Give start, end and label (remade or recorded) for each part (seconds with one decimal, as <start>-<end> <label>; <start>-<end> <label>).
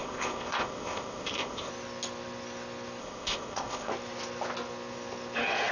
0.0-1.7 remade; 1.7-3.0 recorded; 3.0-3.9 remade; 3.9-5.7 recorded